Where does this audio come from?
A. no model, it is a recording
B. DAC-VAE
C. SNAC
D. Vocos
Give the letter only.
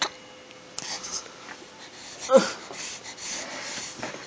A